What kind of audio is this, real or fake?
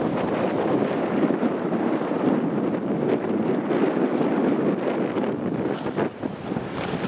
real